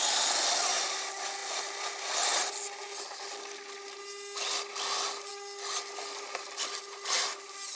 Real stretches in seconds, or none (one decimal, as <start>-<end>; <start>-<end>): 0.0-7.8